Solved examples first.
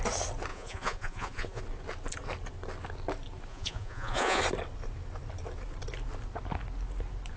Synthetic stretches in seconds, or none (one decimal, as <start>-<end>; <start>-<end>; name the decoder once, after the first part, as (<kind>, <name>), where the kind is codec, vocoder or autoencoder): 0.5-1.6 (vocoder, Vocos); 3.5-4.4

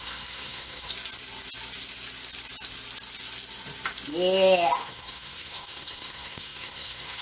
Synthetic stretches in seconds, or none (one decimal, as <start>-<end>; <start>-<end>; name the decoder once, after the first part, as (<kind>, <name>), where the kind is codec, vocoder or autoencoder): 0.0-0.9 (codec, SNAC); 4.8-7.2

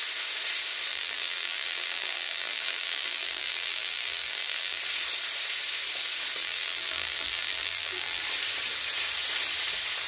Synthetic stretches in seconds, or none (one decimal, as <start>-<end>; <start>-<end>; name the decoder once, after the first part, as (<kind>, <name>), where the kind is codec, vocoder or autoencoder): 0.9-4.8 (vocoder, BigVGAN v2); 6.4-8.2

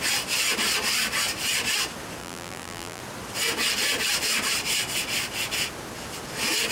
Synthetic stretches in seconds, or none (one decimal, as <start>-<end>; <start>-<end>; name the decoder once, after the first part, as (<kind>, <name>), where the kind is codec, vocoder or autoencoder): 2.2-3.0 (vocoder, BigVGAN v2)

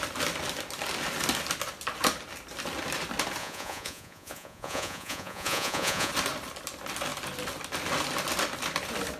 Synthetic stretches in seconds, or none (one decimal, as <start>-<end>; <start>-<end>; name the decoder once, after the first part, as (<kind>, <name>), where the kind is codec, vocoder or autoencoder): 3.4-6.1 (vocoder, Vocos)

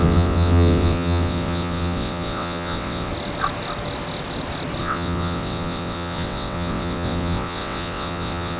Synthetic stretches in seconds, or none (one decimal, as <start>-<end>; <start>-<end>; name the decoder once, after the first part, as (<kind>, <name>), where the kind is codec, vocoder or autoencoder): 0.0-3.1 (vocoder, WaveNeXt); 4.8-8.6